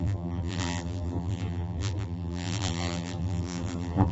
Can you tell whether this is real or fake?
fake